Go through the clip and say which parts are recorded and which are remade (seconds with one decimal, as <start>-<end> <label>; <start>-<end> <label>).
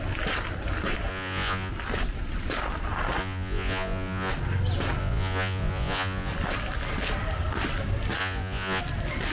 0.0-1.1 recorded; 1.1-1.7 remade; 1.7-3.2 recorded; 3.2-4.3 remade; 4.3-5.0 recorded; 5.0-6.3 remade; 6.3-8.2 recorded; 8.2-8.8 remade; 8.8-9.3 recorded